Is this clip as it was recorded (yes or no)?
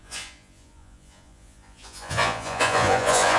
no